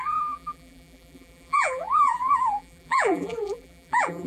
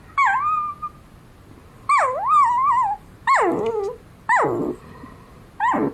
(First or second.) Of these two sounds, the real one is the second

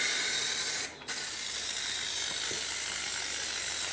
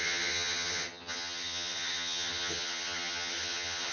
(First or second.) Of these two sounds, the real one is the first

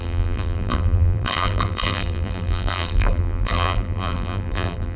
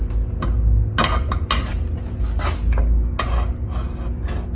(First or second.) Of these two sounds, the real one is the second